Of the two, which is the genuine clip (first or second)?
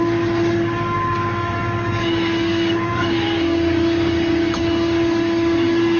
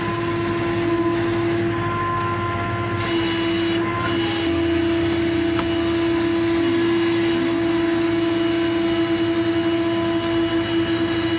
second